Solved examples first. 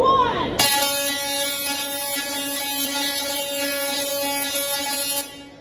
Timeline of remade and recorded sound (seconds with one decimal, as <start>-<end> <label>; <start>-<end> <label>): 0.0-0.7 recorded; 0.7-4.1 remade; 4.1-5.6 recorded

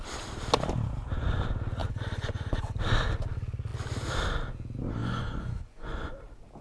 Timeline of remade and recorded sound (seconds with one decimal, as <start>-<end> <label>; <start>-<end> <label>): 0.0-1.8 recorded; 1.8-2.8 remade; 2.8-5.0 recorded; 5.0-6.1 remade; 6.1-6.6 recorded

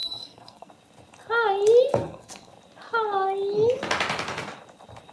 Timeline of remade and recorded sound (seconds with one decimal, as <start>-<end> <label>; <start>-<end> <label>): 0.0-0.7 remade; 0.7-1.9 recorded; 1.9-2.5 remade; 2.5-5.1 recorded

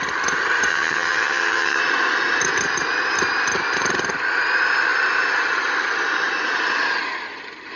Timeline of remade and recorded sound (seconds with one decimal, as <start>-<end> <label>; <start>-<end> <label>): 0.0-0.7 recorded; 0.7-1.8 remade; 1.8-7.8 recorded